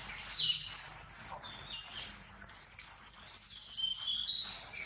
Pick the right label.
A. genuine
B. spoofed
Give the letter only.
A